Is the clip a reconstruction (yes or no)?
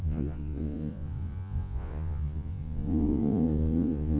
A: yes